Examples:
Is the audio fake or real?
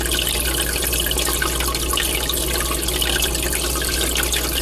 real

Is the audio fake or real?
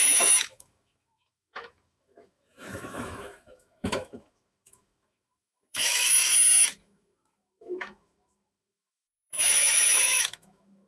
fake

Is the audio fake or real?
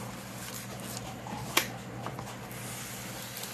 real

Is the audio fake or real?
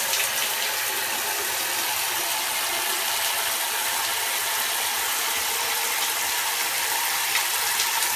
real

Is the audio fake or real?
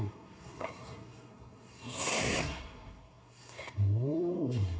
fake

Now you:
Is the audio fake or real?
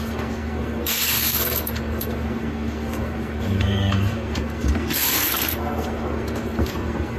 fake